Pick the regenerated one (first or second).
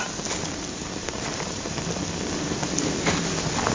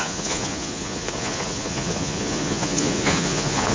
second